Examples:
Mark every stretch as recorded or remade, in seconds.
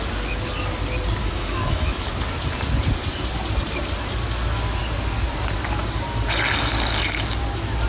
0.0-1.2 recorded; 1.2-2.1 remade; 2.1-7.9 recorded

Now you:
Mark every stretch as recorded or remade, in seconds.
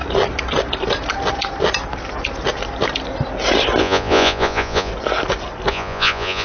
0.0-3.8 recorded; 3.8-4.9 remade; 4.9-5.7 recorded; 5.7-6.4 remade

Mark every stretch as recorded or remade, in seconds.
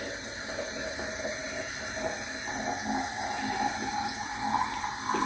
0.0-5.3 recorded